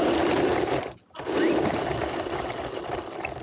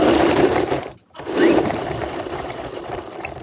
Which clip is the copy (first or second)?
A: second